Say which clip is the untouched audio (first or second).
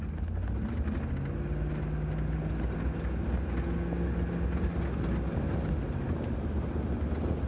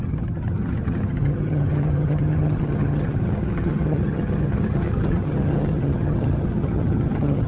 first